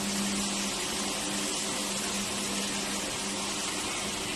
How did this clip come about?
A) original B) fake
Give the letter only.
A